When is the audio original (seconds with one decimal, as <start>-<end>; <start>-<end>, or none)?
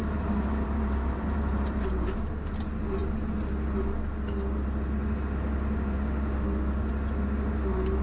2.2-8.0